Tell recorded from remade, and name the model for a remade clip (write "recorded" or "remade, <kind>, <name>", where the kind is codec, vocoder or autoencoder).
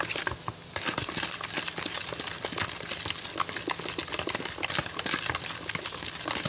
recorded